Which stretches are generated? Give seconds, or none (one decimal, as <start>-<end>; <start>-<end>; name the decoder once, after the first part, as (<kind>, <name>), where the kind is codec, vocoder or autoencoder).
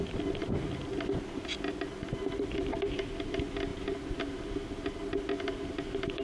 none